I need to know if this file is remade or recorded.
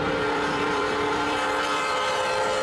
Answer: remade